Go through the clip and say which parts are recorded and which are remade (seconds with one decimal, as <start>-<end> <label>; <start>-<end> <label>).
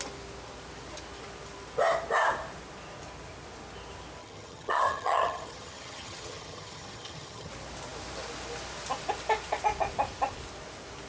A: 0.0-4.2 recorded; 4.2-7.5 remade; 7.5-11.1 recorded